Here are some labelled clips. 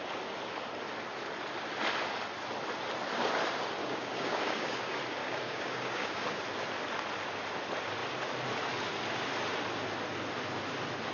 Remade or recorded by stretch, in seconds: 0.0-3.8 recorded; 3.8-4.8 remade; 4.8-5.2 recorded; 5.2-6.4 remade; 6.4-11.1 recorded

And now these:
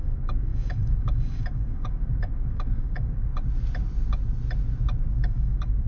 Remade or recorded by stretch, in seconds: 0.0-3.3 remade; 3.3-5.1 recorded; 5.1-5.9 remade

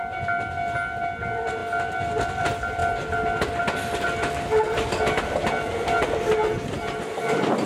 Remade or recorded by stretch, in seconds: 0.0-7.7 recorded

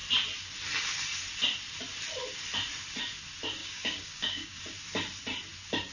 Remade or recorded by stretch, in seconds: 0.0-3.6 recorded; 3.6-4.6 remade; 4.6-5.9 recorded

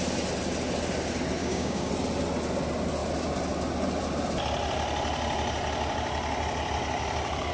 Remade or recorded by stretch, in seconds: 0.0-1.4 recorded; 1.4-1.9 remade; 1.9-7.5 recorded